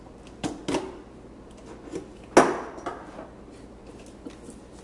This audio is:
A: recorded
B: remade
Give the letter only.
A